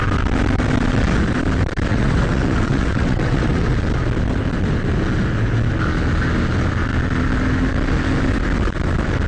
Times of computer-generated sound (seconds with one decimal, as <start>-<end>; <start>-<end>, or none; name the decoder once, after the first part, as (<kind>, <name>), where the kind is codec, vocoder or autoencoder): 1.9-3.7 (vocoder, WaveNeXt)